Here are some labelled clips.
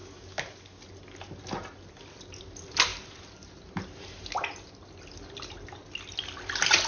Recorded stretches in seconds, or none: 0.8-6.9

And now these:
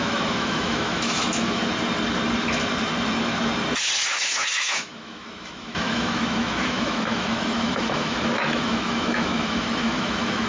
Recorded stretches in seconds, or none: 1.6-4.1

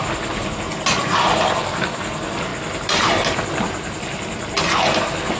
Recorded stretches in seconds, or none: 0.0-5.4